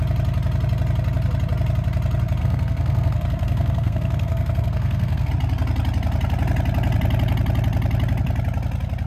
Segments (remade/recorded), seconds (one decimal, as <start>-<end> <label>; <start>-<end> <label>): 0.0-2.4 recorded; 2.4-5.3 remade; 5.3-9.1 recorded